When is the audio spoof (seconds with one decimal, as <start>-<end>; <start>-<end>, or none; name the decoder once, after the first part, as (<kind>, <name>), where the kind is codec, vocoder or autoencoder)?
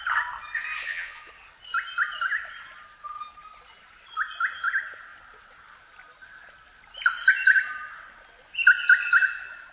0.8-1.3 (vocoder, Vocos)